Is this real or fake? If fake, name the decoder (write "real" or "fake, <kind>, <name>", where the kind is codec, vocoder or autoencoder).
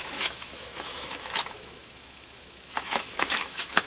fake, autoencoder, DAC-VAE